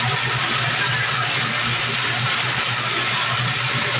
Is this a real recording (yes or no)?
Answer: yes